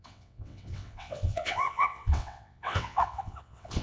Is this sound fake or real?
fake